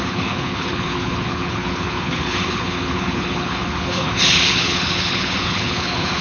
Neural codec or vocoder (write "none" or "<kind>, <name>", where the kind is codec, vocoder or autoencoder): codec, HILCodec